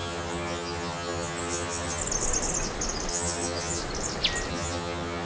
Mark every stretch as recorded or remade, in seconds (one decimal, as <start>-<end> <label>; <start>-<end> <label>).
0.0-2.0 remade; 2.0-3.1 recorded; 3.1-3.8 remade; 3.8-4.5 recorded; 4.5-5.3 remade